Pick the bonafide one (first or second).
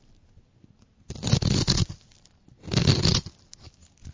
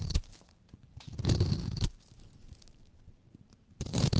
first